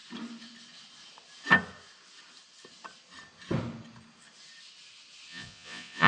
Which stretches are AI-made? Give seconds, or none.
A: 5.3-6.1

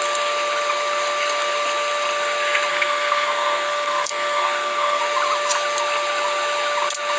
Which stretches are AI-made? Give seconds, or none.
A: 2.7-5.0

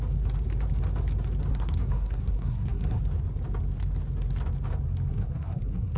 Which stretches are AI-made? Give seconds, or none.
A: 1.5-3.0; 5.1-6.0

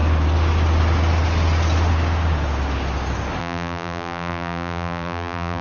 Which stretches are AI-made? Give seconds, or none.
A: 3.4-5.6

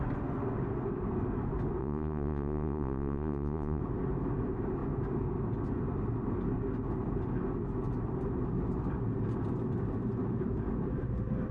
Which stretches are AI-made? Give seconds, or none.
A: 1.8-3.8

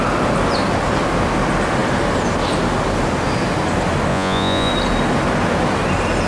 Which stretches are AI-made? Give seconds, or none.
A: 4.1-4.7